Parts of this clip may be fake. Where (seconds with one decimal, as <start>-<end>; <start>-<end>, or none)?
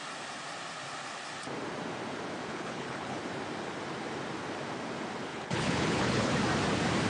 2.5-3.2; 5.3-6.3